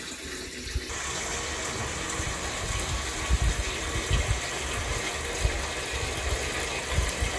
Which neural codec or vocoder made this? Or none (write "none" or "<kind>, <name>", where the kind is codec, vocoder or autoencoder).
none